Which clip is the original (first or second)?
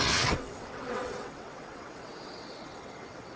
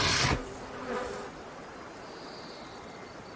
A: second